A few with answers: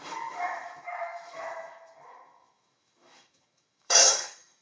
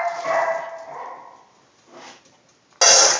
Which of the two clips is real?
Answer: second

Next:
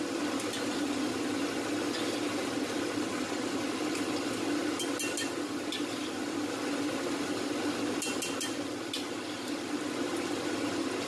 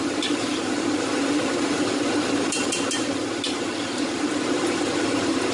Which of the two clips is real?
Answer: first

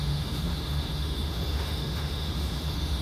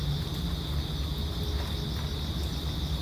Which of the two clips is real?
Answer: second